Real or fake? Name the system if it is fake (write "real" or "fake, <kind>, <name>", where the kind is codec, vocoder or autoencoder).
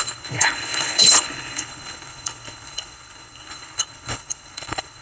fake, codec, HILCodec